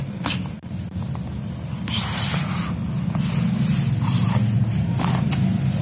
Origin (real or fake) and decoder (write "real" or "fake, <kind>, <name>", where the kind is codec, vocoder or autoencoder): real